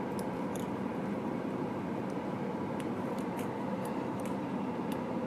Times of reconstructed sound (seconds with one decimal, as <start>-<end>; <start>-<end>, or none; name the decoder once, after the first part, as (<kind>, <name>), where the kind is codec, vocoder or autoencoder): 0.9-4.1 (vocoder, BigVGAN v2)